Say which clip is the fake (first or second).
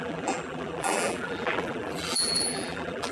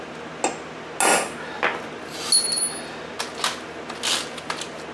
first